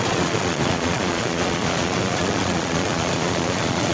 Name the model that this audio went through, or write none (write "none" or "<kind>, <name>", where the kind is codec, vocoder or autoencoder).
vocoder, Vocos